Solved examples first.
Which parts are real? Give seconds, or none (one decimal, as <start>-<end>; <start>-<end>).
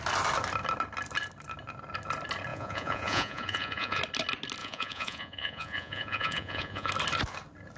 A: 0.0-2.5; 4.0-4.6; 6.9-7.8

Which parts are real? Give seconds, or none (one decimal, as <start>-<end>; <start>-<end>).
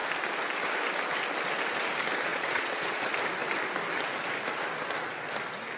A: 0.0-2.3; 3.0-5.8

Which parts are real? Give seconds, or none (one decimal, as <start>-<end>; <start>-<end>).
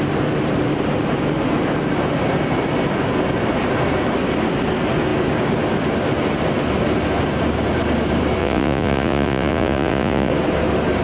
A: 0.0-8.4; 10.3-11.0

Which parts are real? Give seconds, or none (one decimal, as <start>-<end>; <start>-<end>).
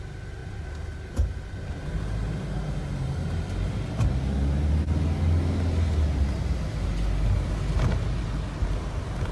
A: 0.0-9.3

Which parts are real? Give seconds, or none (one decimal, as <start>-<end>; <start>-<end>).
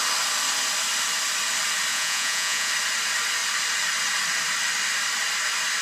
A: 0.0-1.9; 2.7-5.8